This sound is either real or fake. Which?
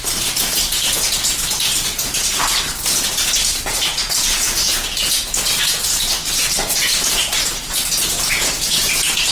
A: fake